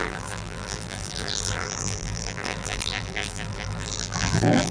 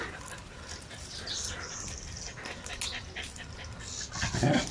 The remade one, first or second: first